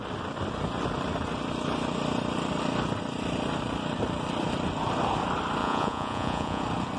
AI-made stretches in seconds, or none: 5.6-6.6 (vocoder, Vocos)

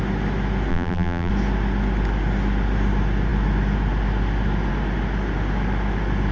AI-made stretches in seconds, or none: 0.7-1.3 (vocoder, BigVGAN v2)

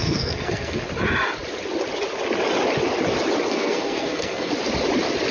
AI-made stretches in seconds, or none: 0.0-0.8 (codec, SNAC); 3.5-4.5

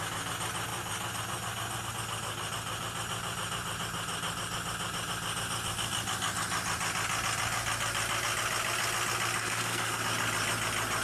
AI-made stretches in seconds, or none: 9.4-10.0 (codec, SNAC)

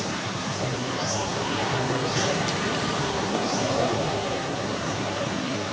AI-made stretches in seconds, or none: 0.0-2.4 (codec, SNAC); 3.0-5.7